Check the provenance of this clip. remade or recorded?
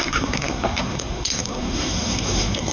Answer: remade